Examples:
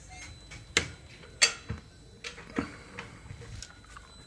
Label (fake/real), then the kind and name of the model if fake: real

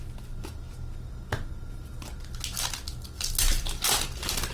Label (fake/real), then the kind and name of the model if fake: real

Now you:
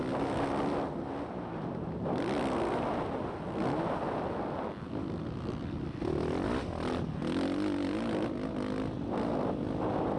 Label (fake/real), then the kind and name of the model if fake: real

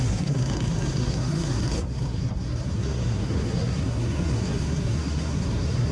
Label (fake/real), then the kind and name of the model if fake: fake, codec, SNAC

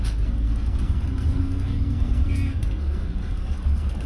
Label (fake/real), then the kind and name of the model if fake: fake, codec, SNAC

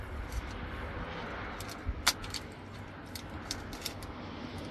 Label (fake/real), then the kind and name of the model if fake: real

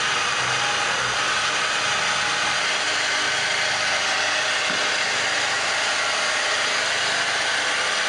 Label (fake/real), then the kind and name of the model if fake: real